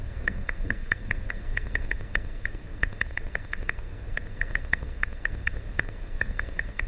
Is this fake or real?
fake